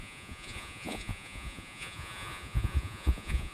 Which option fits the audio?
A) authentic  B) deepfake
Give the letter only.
B